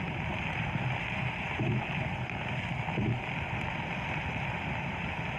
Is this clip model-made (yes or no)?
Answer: no